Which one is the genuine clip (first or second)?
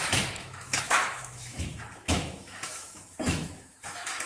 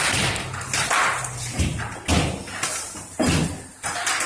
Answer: second